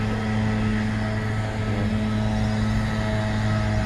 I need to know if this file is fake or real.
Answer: real